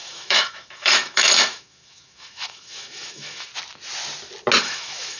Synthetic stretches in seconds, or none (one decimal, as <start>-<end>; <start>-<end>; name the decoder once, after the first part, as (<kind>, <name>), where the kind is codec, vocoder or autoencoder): 0.0-3.5 (autoencoder, DAC-VAE); 4.6-5.2